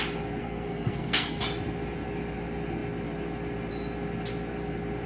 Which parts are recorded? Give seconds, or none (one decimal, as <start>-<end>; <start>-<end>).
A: 0.0-0.4; 1.4-5.1